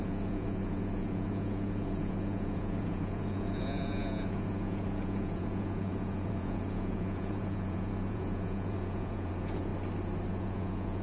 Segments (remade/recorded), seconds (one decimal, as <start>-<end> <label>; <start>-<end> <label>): 0.0-9.7 remade; 9.7-10.3 recorded; 10.3-11.0 remade